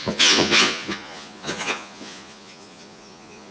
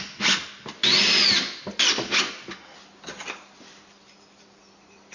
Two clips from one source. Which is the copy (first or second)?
first